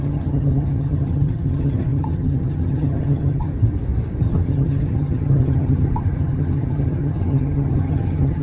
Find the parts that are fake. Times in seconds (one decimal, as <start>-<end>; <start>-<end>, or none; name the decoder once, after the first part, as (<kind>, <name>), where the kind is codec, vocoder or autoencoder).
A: 0.0-3.5 (vocoder, HiFi-GAN); 4.2-8.4